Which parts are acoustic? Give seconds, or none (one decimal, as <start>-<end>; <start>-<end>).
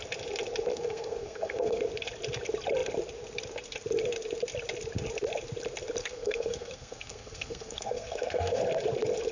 0.0-0.7; 1.8-6.0; 8.6-9.3